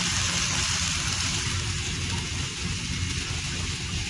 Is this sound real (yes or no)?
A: yes